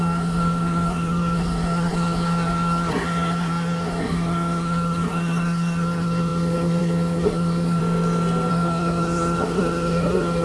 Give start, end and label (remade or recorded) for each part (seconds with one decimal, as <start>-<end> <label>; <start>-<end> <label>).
0.0-7.8 remade; 7.8-8.5 recorded; 8.5-10.4 remade